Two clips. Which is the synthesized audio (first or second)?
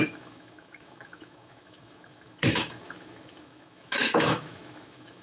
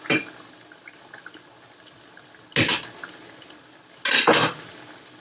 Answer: first